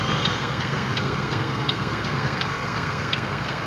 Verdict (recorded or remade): remade